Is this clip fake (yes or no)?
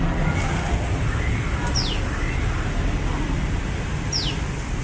no